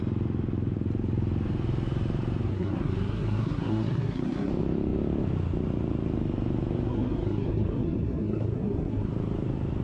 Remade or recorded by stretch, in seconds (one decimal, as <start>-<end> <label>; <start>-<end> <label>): 0.0-2.5 recorded; 2.5-4.5 remade; 4.5-6.9 recorded; 6.9-9.1 remade; 9.1-9.8 recorded